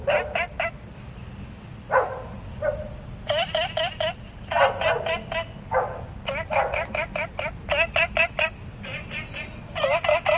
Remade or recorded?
recorded